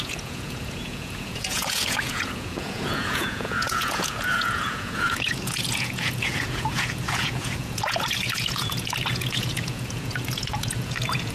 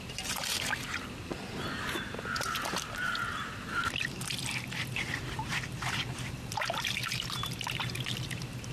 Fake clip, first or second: first